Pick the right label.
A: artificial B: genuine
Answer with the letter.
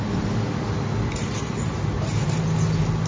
B